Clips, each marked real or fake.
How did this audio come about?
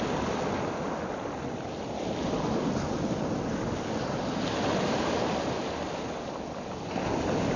real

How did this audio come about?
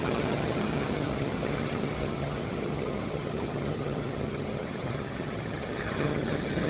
fake